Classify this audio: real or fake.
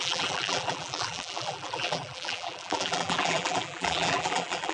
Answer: fake